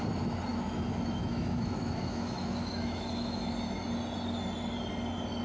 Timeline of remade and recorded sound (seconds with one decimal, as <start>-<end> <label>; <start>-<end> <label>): 0.0-0.5 recorded; 0.5-3.5 remade; 3.5-5.4 recorded